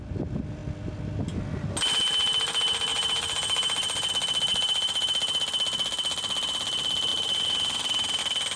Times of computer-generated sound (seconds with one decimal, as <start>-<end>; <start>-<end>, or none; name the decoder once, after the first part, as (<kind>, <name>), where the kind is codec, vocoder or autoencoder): 2.9-4.1 (vocoder, BigVGAN v2); 4.5-5.5; 7.1-8.2